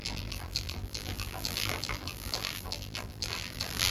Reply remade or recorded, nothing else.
remade